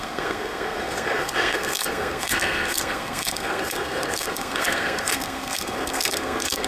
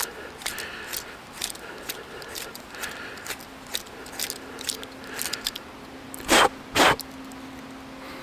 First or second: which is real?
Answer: second